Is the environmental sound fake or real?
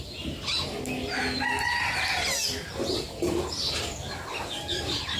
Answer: real